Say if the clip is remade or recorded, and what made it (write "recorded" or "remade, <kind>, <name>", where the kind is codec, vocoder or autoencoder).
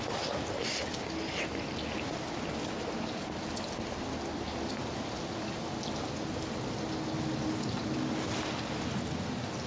recorded